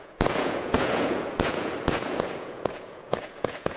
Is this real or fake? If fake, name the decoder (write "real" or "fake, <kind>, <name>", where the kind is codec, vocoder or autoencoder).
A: fake, vocoder, Vocos